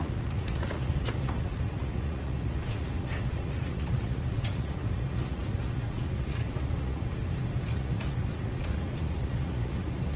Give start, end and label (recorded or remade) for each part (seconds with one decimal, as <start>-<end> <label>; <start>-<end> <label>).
0.0-7.2 remade; 7.2-7.7 recorded; 7.7-10.2 remade